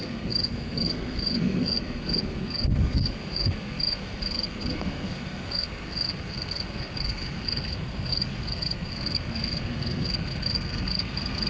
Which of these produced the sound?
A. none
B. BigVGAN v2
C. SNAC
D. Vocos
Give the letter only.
C